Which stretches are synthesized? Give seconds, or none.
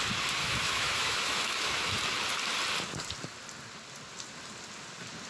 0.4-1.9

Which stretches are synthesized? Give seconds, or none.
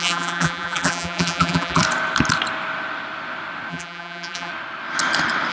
0.0-1.8; 3.7-4.5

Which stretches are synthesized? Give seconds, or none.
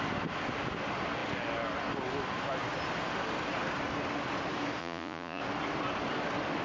4.8-5.4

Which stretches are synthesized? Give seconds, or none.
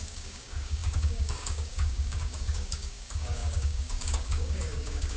0.0-5.2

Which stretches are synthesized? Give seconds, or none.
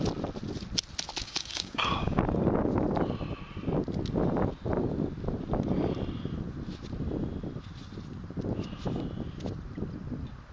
1.2-2.2